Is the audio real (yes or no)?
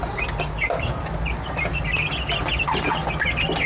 yes